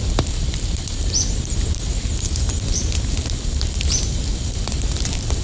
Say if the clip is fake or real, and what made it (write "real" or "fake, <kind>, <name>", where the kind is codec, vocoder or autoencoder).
fake, vocoder, BigVGAN v2